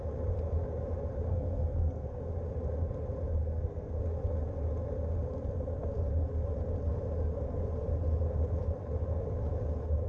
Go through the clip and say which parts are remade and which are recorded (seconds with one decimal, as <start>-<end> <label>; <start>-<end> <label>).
0.0-1.3 recorded; 1.3-2.2 remade; 2.2-3.4 recorded; 3.4-4.0 remade; 4.0-10.1 recorded